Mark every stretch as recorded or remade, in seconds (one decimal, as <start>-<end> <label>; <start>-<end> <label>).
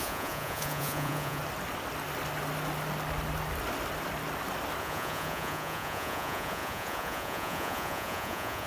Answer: 0.0-1.4 remade; 1.4-4.8 recorded; 4.8-8.7 remade